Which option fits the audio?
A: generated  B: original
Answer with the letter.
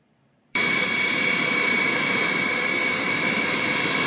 A